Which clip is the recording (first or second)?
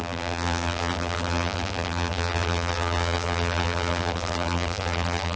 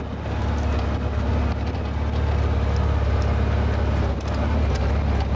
second